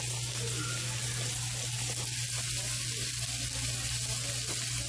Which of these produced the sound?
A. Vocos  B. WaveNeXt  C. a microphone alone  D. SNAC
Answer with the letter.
C